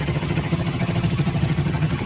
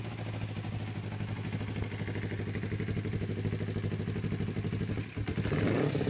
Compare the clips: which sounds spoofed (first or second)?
first